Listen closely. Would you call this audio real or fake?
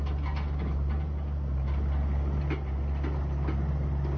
real